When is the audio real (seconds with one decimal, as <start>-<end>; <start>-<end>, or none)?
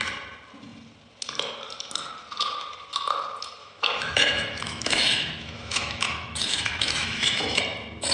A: 0.0-3.6; 7.6-8.1